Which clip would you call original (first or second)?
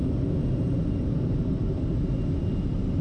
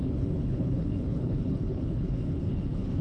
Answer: first